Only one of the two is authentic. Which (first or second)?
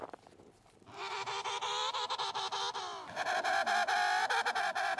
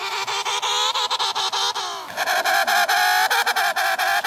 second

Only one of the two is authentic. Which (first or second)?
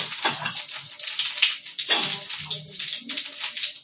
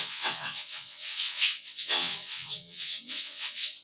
first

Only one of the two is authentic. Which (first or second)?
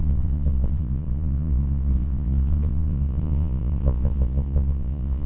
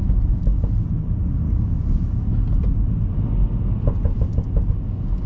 second